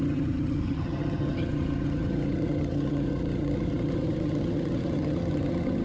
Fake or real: fake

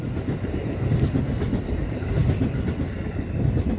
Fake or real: real